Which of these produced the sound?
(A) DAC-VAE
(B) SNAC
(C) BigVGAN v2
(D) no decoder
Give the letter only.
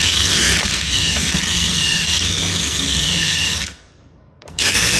B